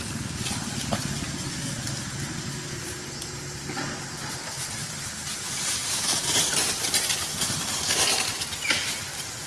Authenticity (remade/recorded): recorded